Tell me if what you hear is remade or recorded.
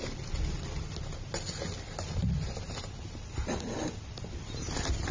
recorded